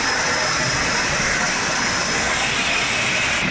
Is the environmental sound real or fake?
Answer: fake